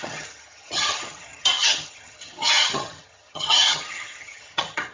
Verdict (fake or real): fake